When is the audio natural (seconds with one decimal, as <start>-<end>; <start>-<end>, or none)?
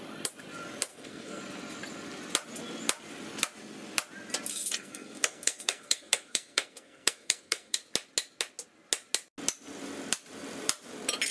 0.0-0.9; 1.4-4.5; 7.8-11.3